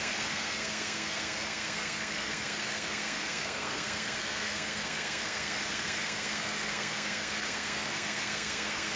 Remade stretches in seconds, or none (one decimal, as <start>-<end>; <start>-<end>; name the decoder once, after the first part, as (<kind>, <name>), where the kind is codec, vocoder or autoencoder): 0.0-9.0 (codec, SNAC)